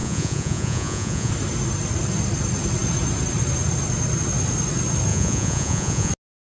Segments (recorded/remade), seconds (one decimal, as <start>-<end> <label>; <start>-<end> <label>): 0.0-1.3 remade; 1.3-5.1 recorded; 5.1-6.1 remade; 6.1-6.5 recorded